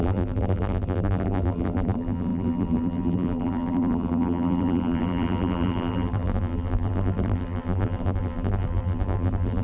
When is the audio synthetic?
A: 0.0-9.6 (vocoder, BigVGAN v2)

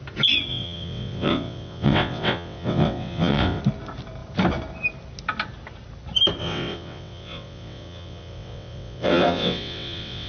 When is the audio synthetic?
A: 0.5-3.6 (vocoder, WaveNeXt); 6.4-10.3

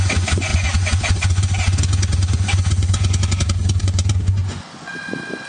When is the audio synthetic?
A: 0.0-5.5 (vocoder, Vocos)